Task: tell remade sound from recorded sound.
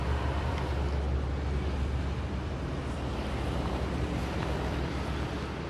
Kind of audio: recorded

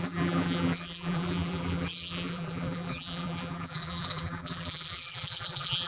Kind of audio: remade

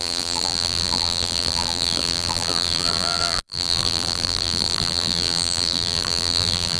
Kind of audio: remade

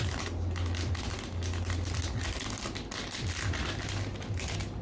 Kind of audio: recorded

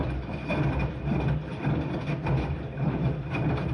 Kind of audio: remade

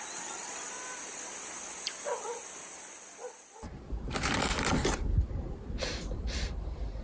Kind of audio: remade